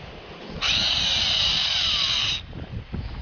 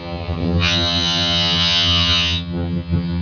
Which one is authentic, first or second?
first